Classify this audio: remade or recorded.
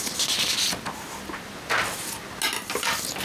recorded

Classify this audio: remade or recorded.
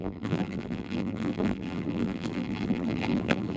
remade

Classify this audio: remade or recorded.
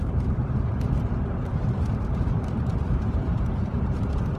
remade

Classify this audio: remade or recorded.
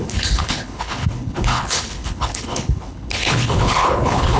remade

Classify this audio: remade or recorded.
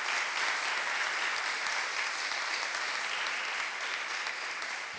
recorded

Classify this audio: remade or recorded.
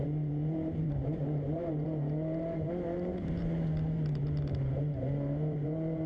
remade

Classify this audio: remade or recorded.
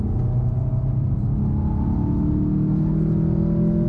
recorded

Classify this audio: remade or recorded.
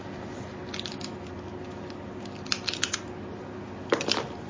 recorded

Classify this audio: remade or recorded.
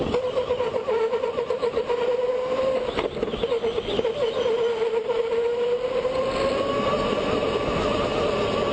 recorded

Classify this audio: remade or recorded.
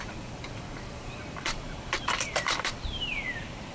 remade